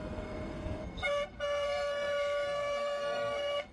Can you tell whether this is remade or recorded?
remade